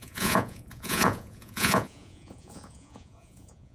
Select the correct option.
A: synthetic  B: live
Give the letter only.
A